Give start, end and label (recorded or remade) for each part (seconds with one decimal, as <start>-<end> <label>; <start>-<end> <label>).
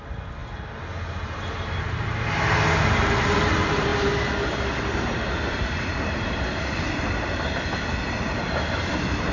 0.0-9.3 recorded